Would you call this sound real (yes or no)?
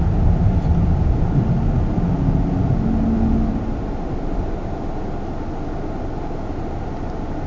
yes